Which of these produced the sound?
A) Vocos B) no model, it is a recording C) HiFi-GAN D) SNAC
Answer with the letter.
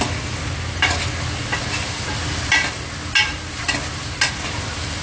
B